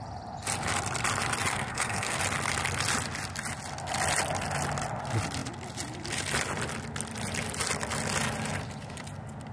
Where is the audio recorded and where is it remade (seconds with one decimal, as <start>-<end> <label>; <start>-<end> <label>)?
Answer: 0.0-1.5 recorded; 1.5-2.2 remade; 2.2-9.5 recorded